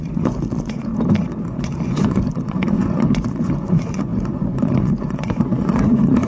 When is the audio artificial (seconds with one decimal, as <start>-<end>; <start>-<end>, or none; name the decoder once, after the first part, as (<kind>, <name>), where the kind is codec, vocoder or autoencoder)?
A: 0.0-0.9 (vocoder, Vocos); 1.6-6.3